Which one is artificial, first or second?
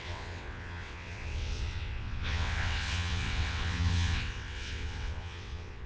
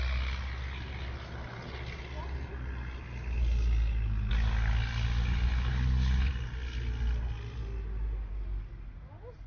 first